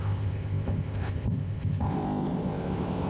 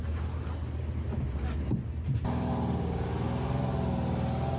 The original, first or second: second